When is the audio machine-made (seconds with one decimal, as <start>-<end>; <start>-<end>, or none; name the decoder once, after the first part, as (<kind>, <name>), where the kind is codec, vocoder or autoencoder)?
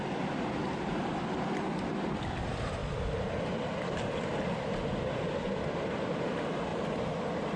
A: 0.0-2.8 (vocoder, BigVGAN v2); 3.4-7.6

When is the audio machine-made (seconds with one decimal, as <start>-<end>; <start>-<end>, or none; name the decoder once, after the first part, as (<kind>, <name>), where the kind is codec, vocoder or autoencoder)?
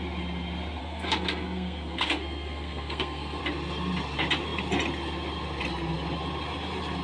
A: 0.8-3.4 (codec, SNAC)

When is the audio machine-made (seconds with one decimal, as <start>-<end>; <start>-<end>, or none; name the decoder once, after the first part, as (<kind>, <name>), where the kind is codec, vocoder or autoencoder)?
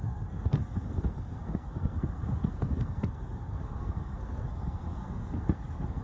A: 0.0-6.0 (codec, SNAC)